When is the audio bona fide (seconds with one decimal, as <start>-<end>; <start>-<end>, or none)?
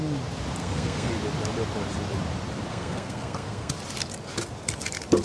0.0-0.6; 1.1-2.7; 3.7-5.2